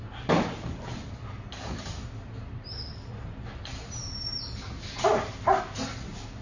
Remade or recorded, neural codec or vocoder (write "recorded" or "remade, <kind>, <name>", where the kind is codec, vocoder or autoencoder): recorded